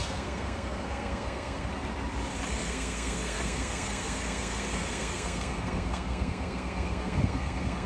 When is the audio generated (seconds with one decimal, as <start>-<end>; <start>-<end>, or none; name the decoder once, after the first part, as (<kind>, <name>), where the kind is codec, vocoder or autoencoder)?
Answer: 0.0-1.7 (codec, SNAC); 2.5-7.9